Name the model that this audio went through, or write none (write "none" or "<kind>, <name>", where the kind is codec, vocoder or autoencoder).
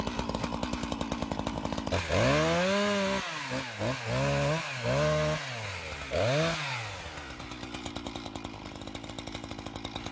none